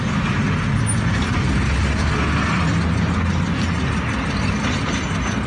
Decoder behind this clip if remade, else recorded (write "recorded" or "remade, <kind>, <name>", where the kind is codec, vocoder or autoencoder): recorded